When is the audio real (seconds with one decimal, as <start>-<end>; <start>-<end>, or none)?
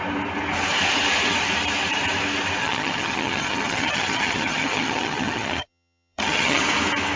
0.0-2.6; 6.6-7.2